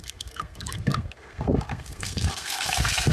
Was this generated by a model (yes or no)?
yes